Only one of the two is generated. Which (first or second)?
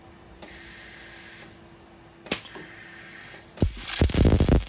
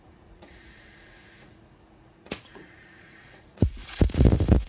second